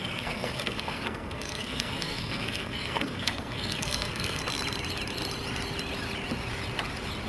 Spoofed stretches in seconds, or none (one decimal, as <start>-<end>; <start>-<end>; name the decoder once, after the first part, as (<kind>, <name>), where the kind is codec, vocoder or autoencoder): 0.0-4.4 (codec, SNAC)